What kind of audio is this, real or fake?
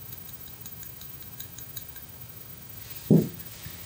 fake